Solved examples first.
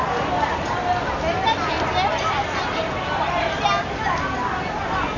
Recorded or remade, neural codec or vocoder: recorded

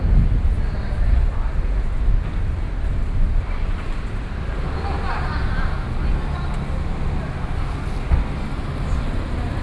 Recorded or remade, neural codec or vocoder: recorded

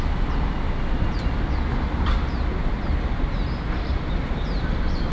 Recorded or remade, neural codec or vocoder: recorded